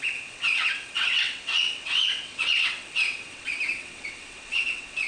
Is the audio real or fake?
fake